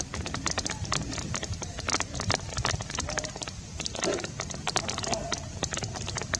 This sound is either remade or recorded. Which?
recorded